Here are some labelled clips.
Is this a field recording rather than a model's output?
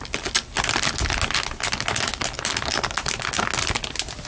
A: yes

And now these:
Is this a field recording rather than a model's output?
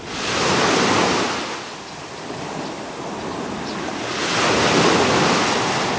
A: yes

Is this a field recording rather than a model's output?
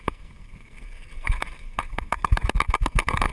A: no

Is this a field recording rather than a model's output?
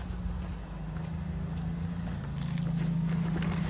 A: yes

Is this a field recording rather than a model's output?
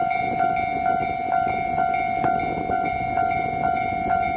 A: yes